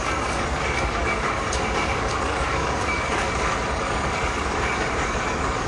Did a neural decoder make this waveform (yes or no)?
yes